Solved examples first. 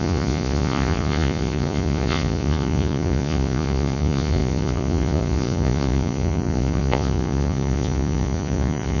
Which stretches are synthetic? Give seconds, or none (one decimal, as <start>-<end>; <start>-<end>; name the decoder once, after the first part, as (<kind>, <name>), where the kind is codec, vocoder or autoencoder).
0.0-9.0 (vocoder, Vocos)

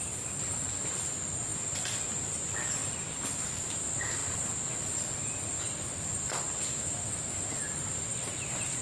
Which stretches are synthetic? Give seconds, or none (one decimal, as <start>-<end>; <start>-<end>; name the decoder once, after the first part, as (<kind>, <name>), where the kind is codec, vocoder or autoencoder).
6.7-7.2 (autoencoder, DAC-VAE)

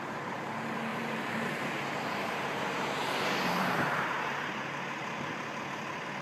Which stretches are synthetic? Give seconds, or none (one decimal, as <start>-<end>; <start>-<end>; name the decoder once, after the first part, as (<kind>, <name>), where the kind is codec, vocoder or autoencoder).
0.9-4.6 (vocoder, BigVGAN v2)

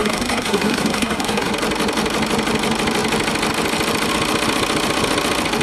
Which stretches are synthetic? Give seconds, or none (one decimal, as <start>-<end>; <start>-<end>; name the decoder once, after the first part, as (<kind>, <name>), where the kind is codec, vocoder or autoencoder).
0.0-1.5 (codec, SNAC)

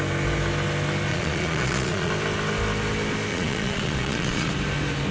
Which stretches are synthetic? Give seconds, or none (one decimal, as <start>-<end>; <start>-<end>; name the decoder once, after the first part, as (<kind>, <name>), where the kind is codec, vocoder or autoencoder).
1.1-2.1 (vocoder, Vocos); 3.3-4.5

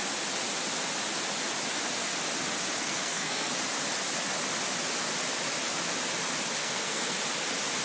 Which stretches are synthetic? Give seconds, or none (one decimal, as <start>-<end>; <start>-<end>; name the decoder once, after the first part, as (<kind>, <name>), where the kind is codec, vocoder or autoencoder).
2.8-3.5 (codec, SNAC); 6.6-7.2

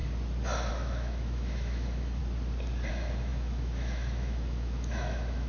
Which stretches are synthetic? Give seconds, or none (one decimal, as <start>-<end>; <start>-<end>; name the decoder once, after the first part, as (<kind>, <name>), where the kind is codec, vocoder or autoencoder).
0.7-2.2 (autoencoder, DAC-VAE); 2.9-5.5